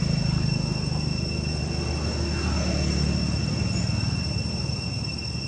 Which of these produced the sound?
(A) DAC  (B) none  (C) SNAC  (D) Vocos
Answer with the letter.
B